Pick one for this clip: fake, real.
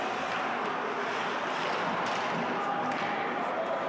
real